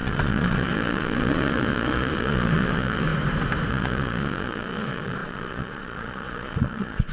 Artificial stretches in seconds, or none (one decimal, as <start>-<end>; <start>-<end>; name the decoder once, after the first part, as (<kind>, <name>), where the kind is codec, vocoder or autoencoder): 0.0-3.1 (vocoder, Vocos); 3.7-7.1